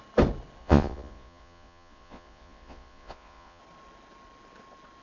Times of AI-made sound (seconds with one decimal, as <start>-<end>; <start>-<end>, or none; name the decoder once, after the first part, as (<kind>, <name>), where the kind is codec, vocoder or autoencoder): 0.6-3.6 (vocoder, Vocos)